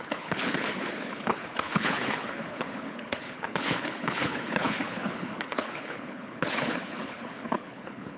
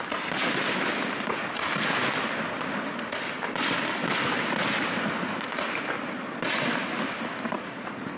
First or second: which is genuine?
second